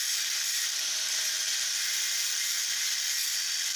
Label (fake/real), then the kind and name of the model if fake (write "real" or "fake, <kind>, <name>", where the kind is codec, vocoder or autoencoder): fake, vocoder, BigVGAN v2